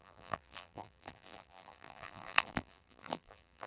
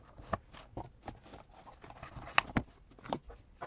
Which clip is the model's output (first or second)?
first